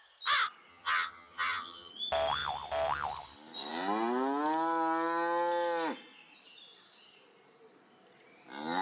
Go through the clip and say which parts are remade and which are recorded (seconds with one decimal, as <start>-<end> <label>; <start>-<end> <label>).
0.0-0.7 recorded; 0.7-1.9 remade; 1.9-8.8 recorded